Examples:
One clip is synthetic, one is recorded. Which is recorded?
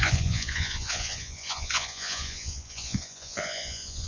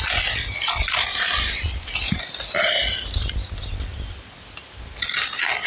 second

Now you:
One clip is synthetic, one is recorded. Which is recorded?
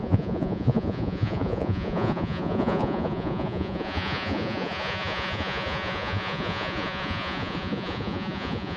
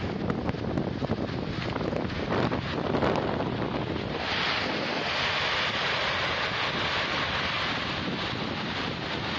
second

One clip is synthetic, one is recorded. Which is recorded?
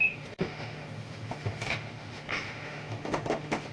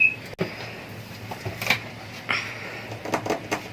second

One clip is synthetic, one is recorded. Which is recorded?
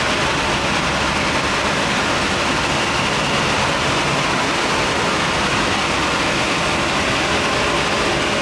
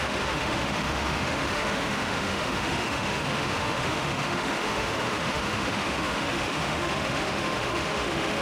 first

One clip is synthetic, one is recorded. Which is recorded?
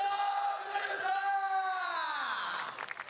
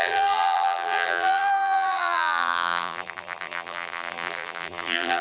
first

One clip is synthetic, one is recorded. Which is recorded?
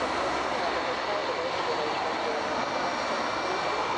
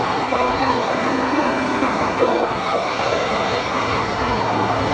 first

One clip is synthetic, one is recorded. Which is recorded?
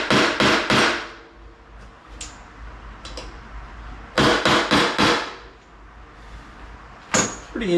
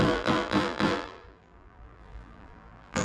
first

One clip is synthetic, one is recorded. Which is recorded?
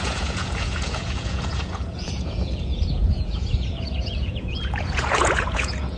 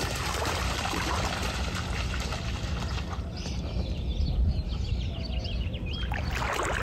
second